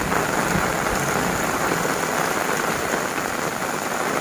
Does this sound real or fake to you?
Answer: real